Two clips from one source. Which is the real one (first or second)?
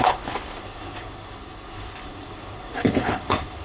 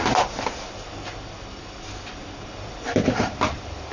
second